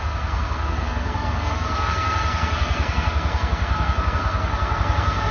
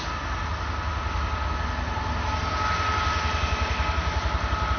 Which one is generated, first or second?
first